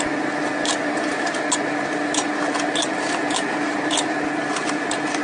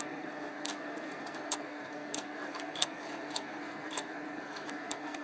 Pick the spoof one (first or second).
second